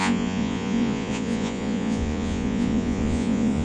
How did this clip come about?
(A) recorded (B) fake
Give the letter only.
B